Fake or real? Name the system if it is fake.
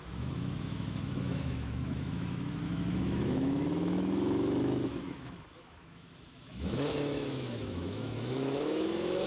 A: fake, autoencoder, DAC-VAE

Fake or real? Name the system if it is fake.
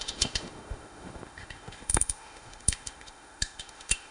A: fake, autoencoder, DAC-VAE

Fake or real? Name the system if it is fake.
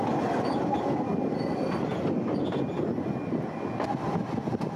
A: real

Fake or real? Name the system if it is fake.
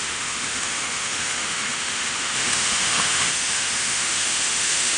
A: fake, autoencoder, DAC-VAE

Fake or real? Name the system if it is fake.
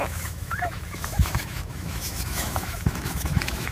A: fake, autoencoder, DAC-VAE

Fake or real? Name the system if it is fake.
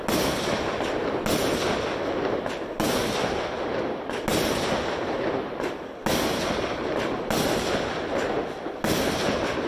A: real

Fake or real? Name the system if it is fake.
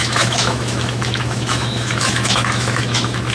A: fake, autoencoder, DAC-VAE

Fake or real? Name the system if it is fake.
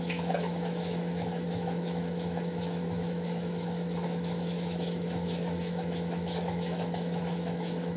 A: fake, autoencoder, DAC-VAE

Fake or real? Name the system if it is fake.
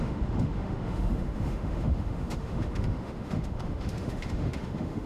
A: fake, autoencoder, DAC-VAE